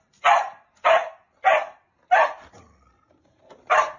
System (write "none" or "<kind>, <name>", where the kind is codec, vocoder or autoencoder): none